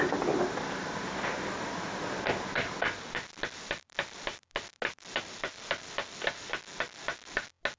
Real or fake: real